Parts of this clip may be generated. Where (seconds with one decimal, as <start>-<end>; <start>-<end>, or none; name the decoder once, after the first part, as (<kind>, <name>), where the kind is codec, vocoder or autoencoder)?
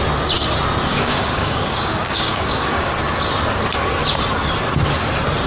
0.9-2.9 (codec, DAC)